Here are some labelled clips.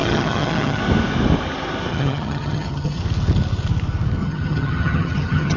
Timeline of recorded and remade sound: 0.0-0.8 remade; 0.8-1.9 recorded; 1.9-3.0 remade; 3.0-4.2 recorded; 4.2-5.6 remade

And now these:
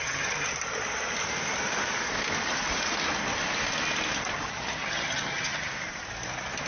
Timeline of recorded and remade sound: 0.0-0.5 remade; 0.5-4.5 recorded; 4.5-5.7 remade; 5.7-6.7 recorded

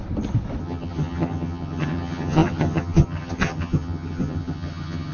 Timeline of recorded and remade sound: 0.0-0.6 recorded; 0.6-5.1 remade

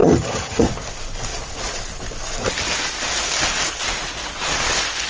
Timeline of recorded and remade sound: 0.0-0.7 remade; 0.7-5.1 recorded